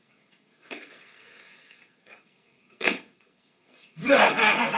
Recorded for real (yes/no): no